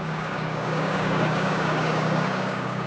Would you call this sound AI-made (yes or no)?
yes